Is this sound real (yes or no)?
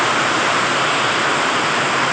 yes